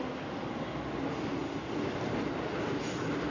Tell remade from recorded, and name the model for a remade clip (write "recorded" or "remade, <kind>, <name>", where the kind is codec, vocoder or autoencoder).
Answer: recorded